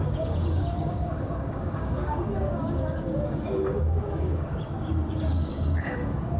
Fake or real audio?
fake